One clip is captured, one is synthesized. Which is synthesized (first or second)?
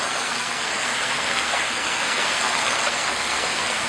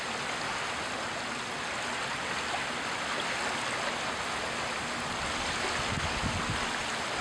first